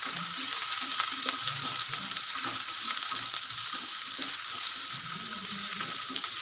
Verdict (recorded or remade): remade